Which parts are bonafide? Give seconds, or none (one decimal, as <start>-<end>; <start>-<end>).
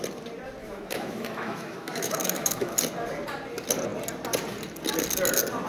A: 0.0-0.6; 2.8-5.7